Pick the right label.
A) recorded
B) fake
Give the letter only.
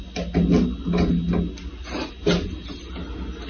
A